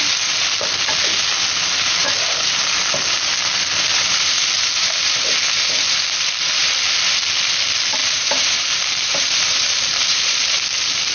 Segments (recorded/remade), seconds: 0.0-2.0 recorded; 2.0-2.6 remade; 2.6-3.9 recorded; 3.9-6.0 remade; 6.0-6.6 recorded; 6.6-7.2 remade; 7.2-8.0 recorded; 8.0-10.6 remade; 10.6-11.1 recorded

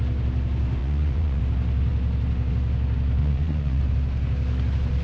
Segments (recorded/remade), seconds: 0.0-0.8 recorded; 0.8-1.4 remade; 1.4-3.2 recorded; 3.2-3.8 remade; 3.8-5.0 recorded

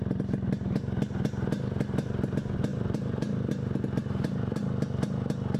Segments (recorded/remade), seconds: 0.0-2.7 recorded; 2.7-3.5 remade; 3.5-4.0 recorded; 4.0-4.6 remade; 4.6-5.6 recorded